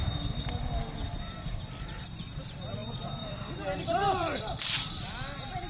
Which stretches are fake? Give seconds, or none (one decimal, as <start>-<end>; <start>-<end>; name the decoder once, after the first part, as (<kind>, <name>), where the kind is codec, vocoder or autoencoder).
0.9-5.7 (vocoder, BigVGAN v2)